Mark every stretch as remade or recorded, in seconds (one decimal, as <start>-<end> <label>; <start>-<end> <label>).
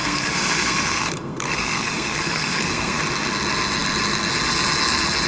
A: 0.0-3.0 remade; 3.0-5.3 recorded